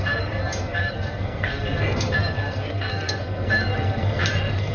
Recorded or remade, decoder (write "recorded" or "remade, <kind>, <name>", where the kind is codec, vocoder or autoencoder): remade, codec, SNAC